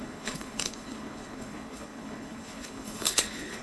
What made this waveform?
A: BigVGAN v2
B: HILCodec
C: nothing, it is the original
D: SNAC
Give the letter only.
B